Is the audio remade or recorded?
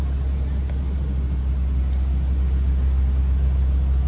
recorded